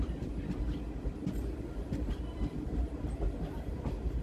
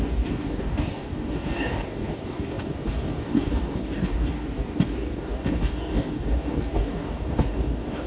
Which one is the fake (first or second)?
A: second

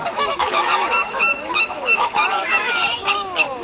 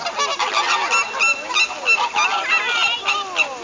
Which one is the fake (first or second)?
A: first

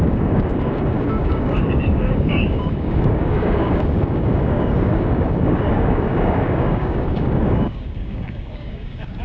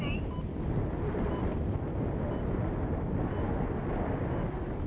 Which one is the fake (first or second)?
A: first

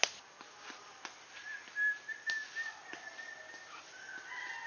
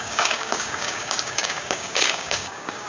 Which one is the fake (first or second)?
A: second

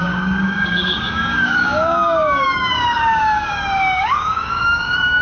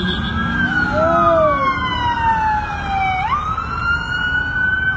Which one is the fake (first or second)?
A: first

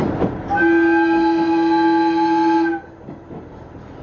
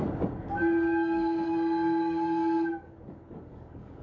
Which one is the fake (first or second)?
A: second